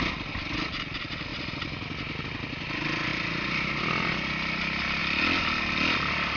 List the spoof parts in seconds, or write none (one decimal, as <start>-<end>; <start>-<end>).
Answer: 5.0-6.4